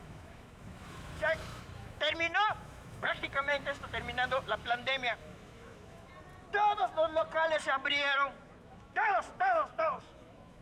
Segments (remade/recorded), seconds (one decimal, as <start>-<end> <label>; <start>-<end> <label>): 0.0-6.1 remade; 6.1-6.8 recorded; 6.8-7.2 remade; 7.2-7.9 recorded; 7.9-10.6 remade